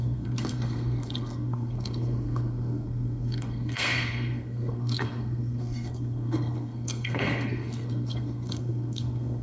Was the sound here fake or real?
fake